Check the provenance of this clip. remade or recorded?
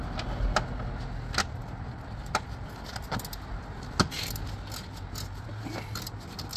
recorded